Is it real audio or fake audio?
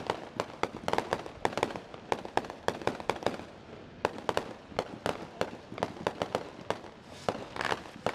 real